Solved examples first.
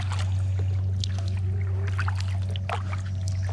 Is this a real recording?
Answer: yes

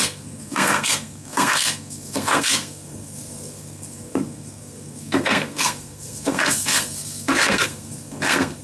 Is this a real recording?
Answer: no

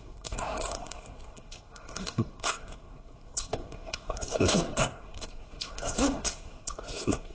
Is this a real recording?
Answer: no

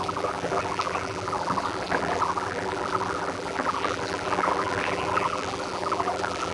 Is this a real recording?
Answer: no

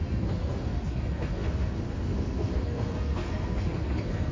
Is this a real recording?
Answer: no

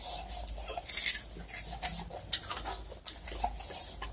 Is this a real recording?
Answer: yes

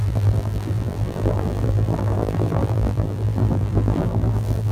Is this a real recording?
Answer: no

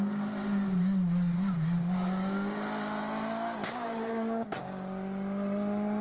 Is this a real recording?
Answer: yes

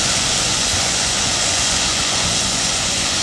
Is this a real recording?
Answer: no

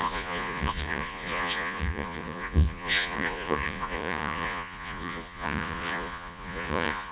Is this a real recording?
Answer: no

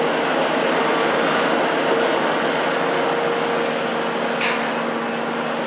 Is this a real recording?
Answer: yes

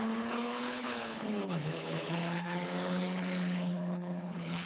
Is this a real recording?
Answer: no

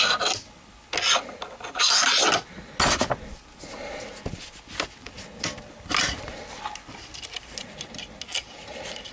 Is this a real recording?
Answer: yes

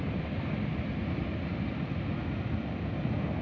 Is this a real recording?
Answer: yes